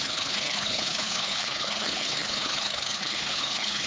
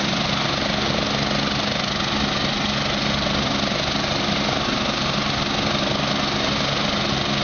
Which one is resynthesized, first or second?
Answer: first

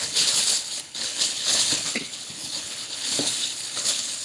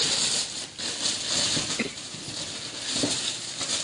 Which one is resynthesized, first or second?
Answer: first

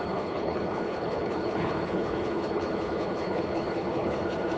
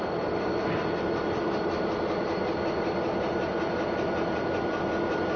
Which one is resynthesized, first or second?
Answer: first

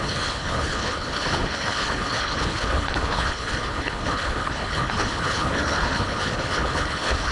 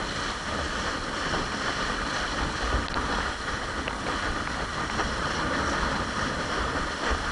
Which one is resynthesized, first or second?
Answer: first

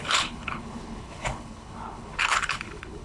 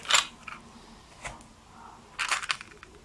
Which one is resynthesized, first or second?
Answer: first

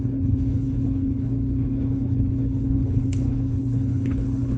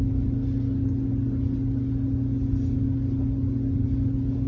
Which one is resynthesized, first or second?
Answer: first